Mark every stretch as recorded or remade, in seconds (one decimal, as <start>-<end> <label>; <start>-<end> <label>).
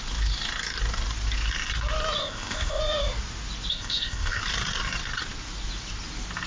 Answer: 0.0-2.2 recorded; 2.2-2.8 remade; 2.8-3.7 recorded; 3.7-4.4 remade; 4.4-6.5 recorded